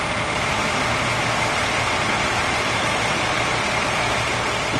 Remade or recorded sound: recorded